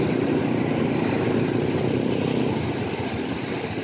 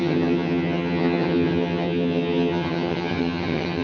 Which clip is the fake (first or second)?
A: second